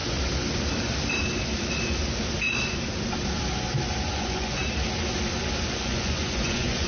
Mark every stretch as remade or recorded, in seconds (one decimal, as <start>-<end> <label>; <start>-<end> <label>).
0.0-4.1 recorded; 4.1-4.6 remade; 4.6-5.7 recorded; 5.7-6.9 remade